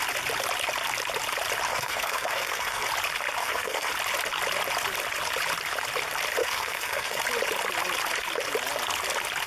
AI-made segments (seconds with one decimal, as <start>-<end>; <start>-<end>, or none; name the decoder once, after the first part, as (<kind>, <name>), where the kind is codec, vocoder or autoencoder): 1.7-2.9 (codec, SNAC); 3.4-3.9; 6.4-7.2

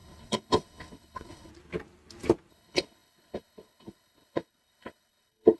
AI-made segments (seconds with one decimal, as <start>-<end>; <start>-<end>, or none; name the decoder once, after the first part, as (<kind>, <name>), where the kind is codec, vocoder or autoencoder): 0.0-1.5 (codec, HILCodec); 2.5-5.6

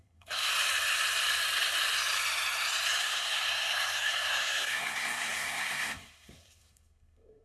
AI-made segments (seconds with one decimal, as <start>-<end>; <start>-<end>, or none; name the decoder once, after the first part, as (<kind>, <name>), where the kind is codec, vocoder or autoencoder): 0.0-0.5 (codec, SNAC); 3.0-7.4